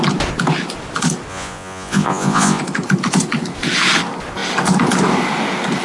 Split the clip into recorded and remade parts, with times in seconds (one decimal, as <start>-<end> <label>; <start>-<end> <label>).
0.0-1.3 recorded; 1.3-2.6 remade; 2.6-5.8 recorded